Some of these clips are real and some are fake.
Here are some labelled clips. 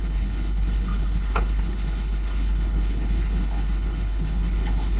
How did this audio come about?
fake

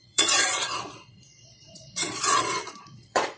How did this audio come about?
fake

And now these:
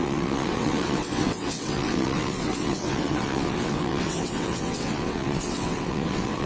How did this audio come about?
fake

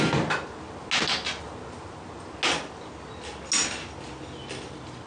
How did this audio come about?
real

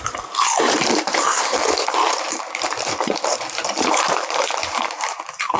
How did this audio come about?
fake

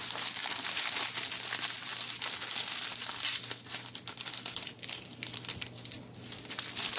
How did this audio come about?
real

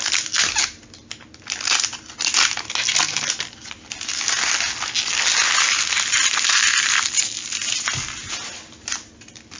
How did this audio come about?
real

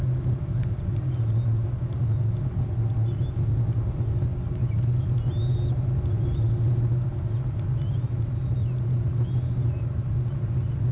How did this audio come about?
real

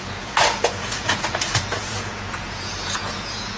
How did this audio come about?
fake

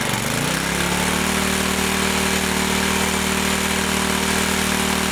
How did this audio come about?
real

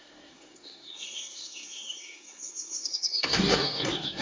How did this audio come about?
fake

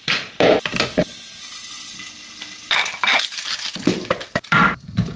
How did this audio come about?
real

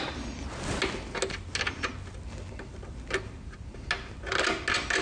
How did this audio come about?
real